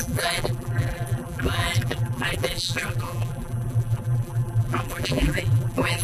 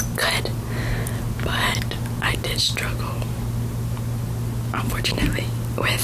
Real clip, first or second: second